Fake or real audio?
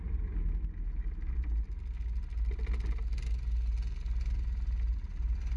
real